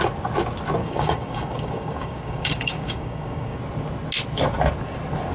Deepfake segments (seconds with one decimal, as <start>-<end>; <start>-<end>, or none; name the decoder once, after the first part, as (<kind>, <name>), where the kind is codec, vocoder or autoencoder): 0.8-3.6 (codec, DAC)